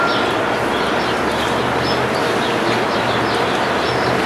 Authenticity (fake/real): real